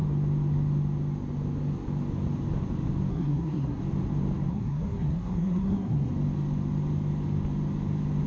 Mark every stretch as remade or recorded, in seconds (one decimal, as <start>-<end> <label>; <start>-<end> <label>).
0.0-3.1 recorded; 3.1-3.8 remade; 3.8-4.5 recorded; 4.5-6.1 remade; 6.1-8.3 recorded